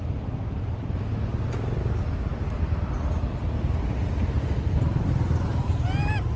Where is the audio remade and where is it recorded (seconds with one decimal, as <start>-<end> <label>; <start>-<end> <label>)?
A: 0.0-6.4 recorded